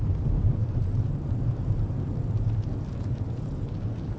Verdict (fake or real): real